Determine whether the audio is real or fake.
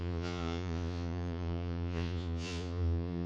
fake